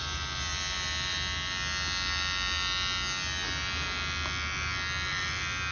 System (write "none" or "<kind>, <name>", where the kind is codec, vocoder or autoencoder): none